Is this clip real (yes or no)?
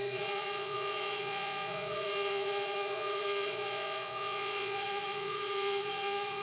no